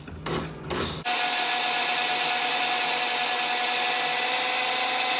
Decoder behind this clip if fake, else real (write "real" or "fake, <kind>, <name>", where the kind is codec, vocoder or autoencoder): real